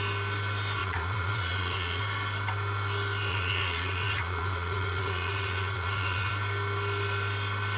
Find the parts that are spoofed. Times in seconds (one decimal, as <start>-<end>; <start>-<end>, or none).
0.8-2.0; 3.3-6.3